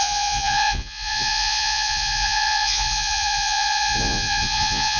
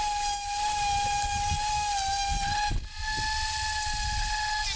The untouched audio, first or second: second